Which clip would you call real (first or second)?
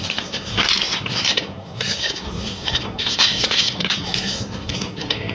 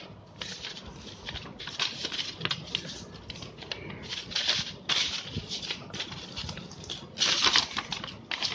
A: second